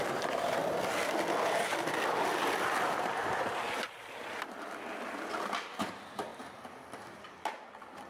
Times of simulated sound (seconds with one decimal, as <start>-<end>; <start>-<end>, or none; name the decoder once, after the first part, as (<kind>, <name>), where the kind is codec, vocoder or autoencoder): 0.0-0.6 (vocoder, BigVGAN v2); 2.3-6.3; 7.0-8.1